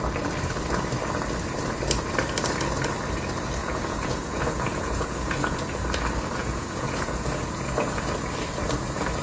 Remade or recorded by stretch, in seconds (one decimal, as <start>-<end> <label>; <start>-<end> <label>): 0.0-3.6 recorded; 3.6-5.6 remade; 5.6-6.4 recorded; 6.4-8.0 remade; 8.0-9.2 recorded